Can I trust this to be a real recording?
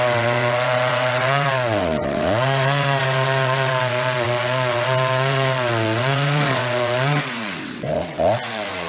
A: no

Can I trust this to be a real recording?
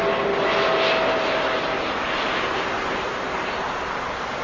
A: yes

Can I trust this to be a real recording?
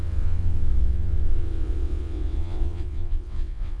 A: no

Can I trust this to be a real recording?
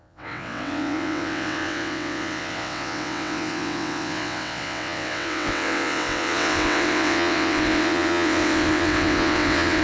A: no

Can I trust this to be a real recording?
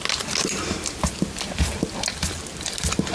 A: yes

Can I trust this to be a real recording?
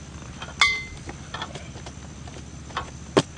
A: yes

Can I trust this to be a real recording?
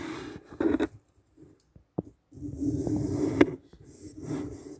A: yes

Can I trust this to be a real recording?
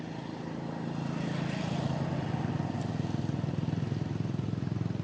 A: yes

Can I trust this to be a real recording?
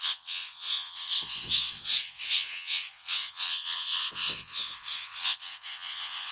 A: no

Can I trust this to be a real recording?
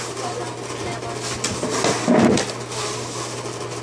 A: yes